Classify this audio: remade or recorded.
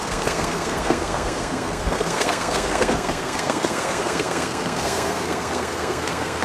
remade